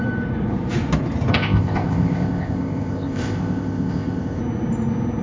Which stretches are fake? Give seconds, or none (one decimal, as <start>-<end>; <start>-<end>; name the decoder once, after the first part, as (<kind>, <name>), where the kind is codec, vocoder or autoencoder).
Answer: 1.3-4.4 (codec, ZipCodec)